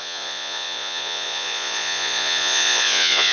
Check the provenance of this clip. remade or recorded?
remade